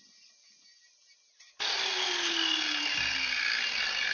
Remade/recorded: recorded